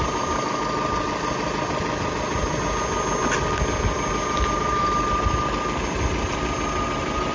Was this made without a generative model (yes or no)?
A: yes